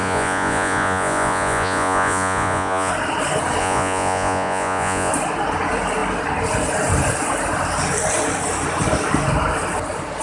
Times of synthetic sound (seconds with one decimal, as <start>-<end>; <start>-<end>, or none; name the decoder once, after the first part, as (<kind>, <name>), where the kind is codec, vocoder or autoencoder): 0.0-2.9 (vocoder, Vocos); 3.6-5.1